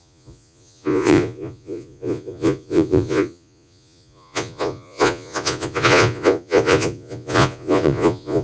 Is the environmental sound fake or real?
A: fake